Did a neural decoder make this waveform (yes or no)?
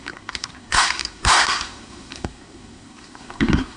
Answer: yes